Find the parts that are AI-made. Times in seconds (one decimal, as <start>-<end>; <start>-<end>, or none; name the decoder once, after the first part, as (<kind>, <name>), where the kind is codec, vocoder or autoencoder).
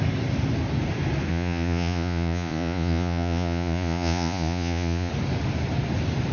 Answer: 1.3-5.1 (vocoder, Vocos)